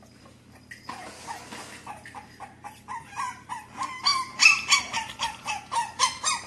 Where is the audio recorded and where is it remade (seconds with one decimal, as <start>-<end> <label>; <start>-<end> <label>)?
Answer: 0.0-2.6 recorded; 2.6-3.5 remade; 3.5-6.5 recorded